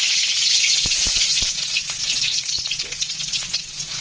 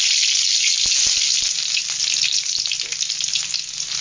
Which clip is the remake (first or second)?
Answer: first